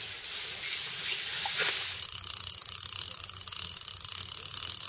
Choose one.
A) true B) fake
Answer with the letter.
A